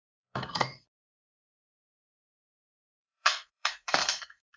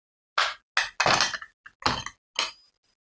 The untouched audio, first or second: second